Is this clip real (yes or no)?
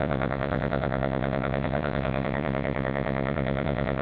no